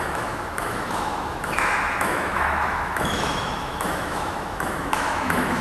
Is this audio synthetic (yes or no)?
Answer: yes